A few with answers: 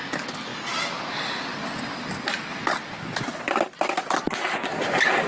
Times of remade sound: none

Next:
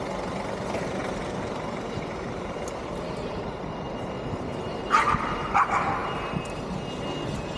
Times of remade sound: 1.0-3.6; 4.5-5.6

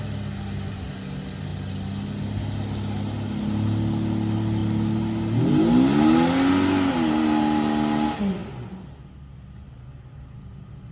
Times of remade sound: none

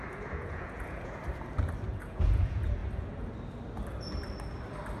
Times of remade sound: 0.0-1.2; 1.9-2.8

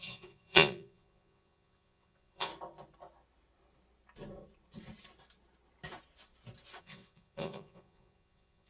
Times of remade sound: 0.0-2.5; 6.8-8.7